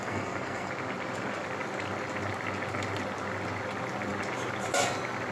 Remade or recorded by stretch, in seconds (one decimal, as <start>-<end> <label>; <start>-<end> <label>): 0.0-0.7 remade; 0.7-5.3 recorded